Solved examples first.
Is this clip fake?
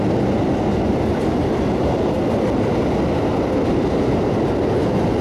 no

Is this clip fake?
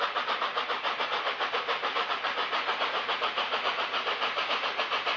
no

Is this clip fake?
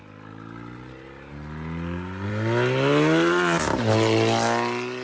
no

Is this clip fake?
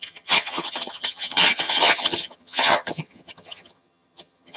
yes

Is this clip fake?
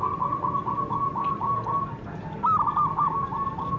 no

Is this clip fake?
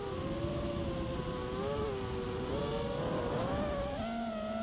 no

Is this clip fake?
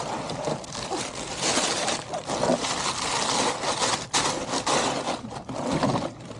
no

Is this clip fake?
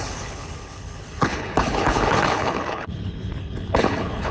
yes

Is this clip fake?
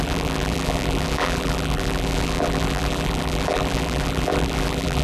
yes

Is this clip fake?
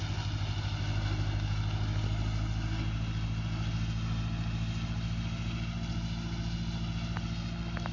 no